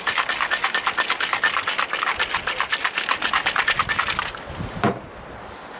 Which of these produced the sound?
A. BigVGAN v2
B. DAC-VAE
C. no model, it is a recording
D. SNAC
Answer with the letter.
C